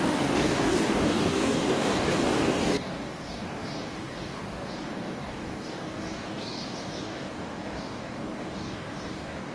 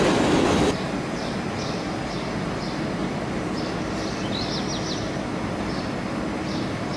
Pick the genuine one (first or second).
second